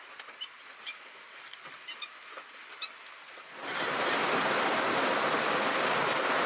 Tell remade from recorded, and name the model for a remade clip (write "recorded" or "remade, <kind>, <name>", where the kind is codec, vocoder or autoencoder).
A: recorded